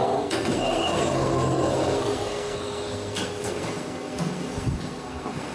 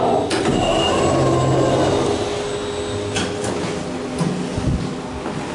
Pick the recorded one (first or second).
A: second